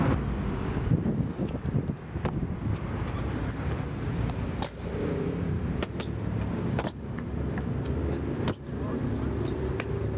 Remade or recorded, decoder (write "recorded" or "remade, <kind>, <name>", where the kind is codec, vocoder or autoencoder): recorded